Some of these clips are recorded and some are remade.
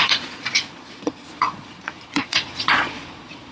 remade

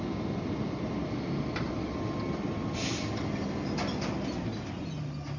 recorded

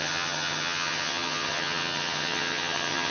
remade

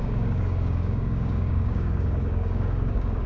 remade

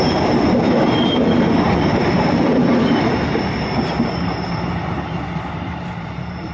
remade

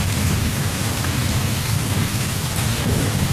remade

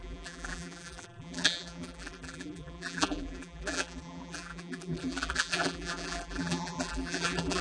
remade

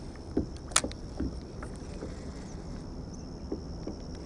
recorded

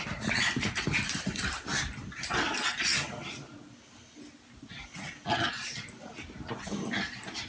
recorded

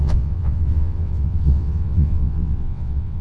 remade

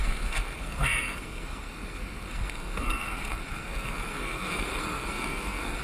remade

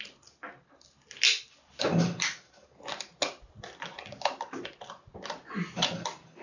recorded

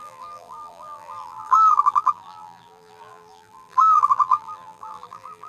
remade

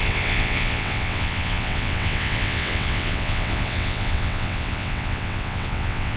remade